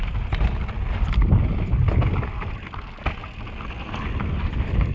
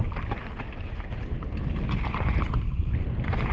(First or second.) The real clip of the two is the first